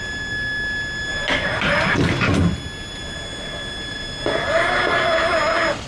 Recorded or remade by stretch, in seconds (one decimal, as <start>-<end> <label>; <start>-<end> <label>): 0.0-1.1 recorded; 1.1-1.9 remade; 1.9-5.9 recorded